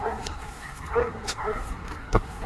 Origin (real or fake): fake